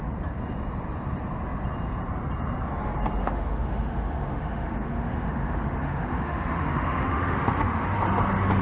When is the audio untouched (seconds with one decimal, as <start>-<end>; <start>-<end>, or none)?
0.0-3.2; 8.0-8.6